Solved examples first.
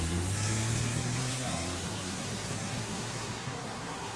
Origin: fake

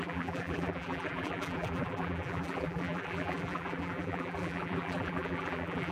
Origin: fake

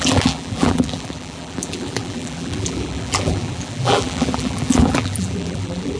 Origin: fake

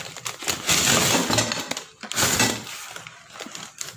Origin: real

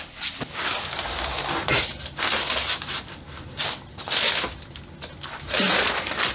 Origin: real